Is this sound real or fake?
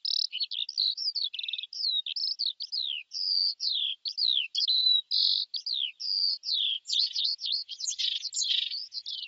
real